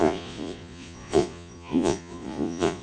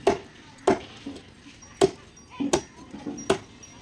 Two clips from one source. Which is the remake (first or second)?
first